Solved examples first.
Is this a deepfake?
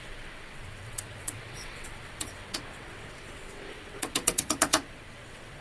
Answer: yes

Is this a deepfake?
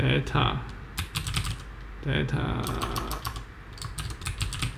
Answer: no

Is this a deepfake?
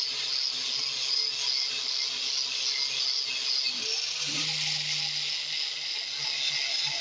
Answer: no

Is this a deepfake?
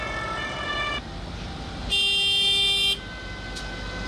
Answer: no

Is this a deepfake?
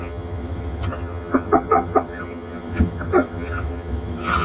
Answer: yes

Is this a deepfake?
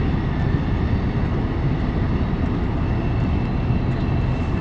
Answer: no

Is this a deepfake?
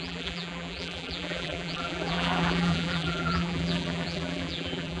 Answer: yes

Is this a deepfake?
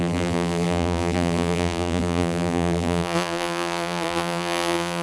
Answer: yes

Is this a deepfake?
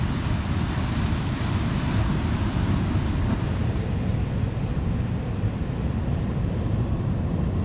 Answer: no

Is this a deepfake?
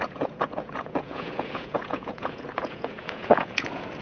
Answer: yes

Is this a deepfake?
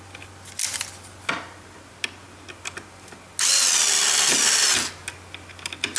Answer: no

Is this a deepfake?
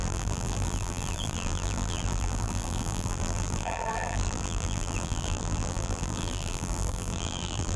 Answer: yes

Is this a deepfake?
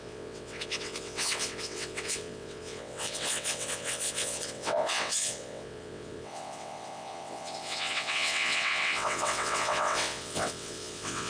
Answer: yes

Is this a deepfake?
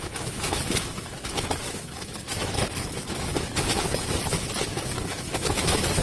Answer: yes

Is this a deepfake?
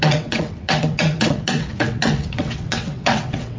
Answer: yes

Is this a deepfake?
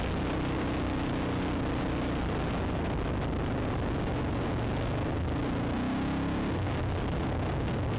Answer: no